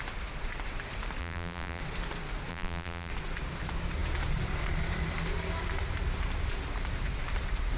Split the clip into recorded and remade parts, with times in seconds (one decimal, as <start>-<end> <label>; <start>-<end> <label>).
0.0-1.2 recorded; 1.2-1.8 remade; 1.8-2.5 recorded; 2.5-3.1 remade; 3.1-7.8 recorded